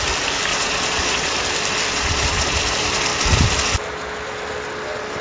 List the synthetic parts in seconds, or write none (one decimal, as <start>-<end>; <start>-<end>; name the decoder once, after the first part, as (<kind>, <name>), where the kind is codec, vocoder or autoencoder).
0.5-1.3 (vocoder, Vocos); 1.9-2.6